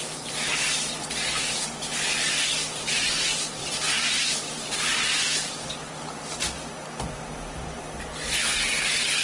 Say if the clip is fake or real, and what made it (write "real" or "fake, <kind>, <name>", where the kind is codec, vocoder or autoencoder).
real